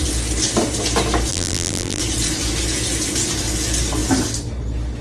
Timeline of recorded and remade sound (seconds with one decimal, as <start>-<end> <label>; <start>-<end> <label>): 0.0-1.3 recorded; 1.3-2.0 remade; 2.0-5.0 recorded